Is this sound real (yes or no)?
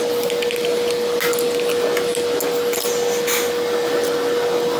yes